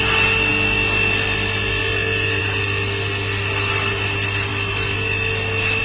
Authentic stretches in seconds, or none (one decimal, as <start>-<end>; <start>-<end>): 0.0-5.8